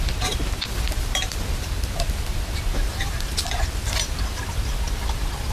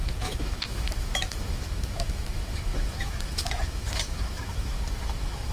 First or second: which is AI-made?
second